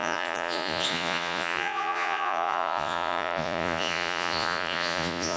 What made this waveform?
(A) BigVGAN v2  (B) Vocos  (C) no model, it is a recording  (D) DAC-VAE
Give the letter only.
B